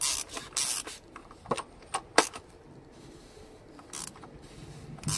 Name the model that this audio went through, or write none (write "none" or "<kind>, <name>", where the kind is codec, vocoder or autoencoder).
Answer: none